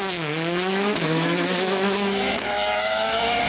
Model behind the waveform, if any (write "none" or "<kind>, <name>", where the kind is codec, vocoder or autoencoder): autoencoder, DAC-VAE